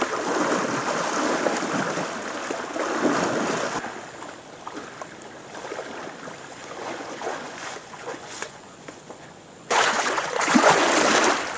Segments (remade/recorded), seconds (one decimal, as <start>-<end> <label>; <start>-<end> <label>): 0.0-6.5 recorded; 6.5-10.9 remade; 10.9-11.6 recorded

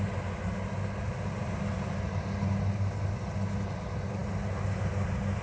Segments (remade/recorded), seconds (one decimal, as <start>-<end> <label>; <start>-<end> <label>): 0.0-5.4 recorded

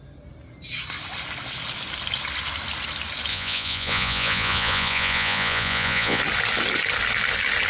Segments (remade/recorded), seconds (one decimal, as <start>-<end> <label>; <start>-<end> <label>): 0.0-3.3 recorded; 3.3-6.2 remade; 6.2-7.7 recorded